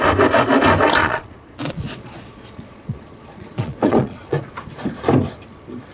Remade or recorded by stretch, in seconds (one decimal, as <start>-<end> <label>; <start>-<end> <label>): 0.0-1.0 recorded; 1.0-4.5 remade; 4.5-5.9 recorded